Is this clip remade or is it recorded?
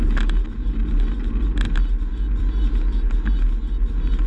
recorded